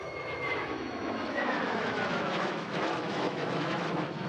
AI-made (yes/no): yes